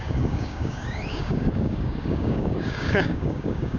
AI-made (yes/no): yes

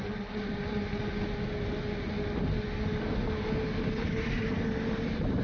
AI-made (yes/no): no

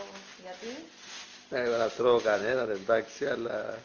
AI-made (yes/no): no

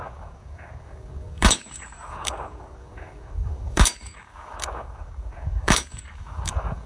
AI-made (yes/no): yes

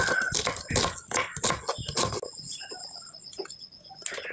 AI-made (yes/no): no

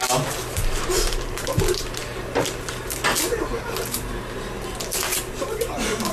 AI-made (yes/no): no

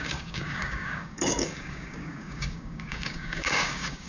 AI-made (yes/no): yes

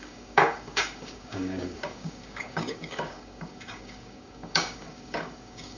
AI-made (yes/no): yes